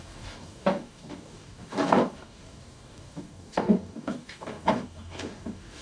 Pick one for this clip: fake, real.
fake